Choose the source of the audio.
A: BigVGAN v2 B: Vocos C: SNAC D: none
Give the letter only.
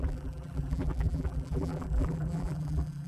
A